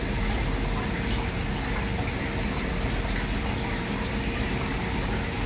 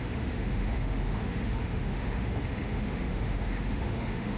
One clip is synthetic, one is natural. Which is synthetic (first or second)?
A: second